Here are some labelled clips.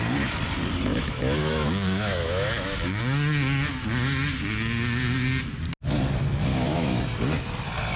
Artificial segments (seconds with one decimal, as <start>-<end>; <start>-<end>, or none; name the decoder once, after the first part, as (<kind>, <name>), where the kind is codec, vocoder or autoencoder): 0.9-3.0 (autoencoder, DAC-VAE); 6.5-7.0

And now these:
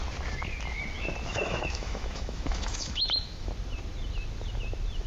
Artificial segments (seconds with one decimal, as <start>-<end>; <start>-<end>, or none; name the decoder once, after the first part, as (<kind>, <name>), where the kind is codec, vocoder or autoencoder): 1.3-3.5 (autoencoder, DAC-VAE)

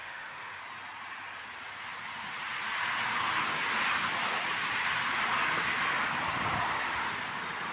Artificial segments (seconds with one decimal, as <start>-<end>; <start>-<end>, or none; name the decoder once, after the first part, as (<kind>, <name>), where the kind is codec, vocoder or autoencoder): 0.0-0.6 (autoencoder, DAC-VAE)

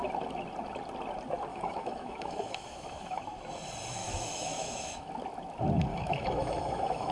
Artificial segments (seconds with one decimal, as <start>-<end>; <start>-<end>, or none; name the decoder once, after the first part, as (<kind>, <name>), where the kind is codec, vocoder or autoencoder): 1.5-3.2 (autoencoder, DAC-VAE); 4.0-5.1; 5.9-7.1